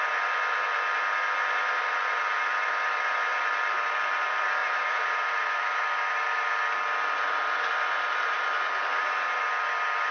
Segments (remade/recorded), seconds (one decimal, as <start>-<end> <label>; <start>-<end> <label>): 0.0-4.6 recorded; 4.6-5.8 remade; 5.8-9.0 recorded; 9.0-9.7 remade; 9.7-10.1 recorded